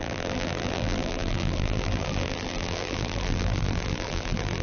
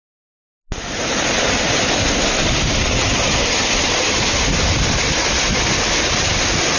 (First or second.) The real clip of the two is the second